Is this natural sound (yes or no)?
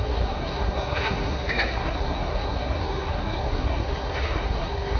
no